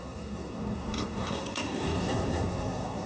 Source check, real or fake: fake